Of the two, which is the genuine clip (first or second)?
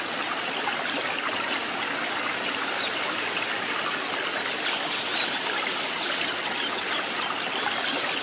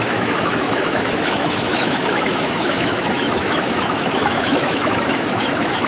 first